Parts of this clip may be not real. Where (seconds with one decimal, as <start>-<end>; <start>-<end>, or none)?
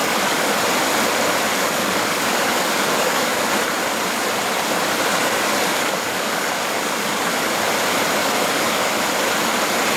0.0-0.6; 1.5-3.5; 5.1-7.5; 8.2-8.9